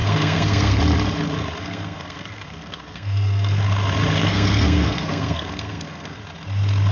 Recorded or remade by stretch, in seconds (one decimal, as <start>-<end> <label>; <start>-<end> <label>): 0.0-0.8 remade; 0.8-1.6 recorded; 1.6-3.6 remade; 3.6-4.2 recorded; 4.2-6.2 remade; 6.2-6.9 recorded